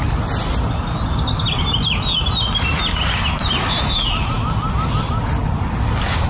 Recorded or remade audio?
recorded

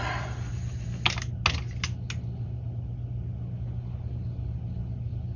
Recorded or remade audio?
recorded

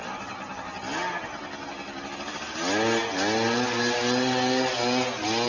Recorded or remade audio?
recorded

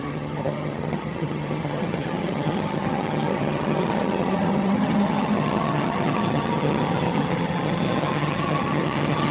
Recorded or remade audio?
remade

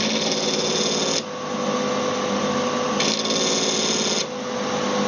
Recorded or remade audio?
recorded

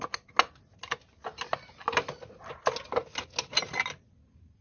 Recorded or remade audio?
recorded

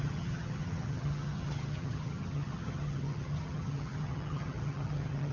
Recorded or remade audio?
remade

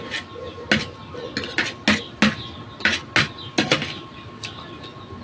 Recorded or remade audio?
recorded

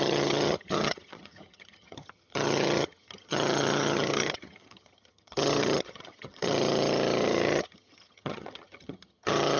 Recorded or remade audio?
remade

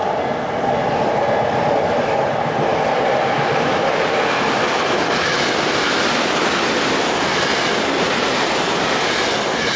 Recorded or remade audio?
recorded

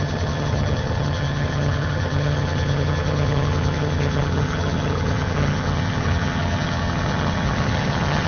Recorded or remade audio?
remade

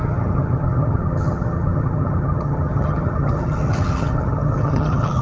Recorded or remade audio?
remade